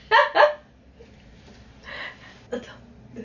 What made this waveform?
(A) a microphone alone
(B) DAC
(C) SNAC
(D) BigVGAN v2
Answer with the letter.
A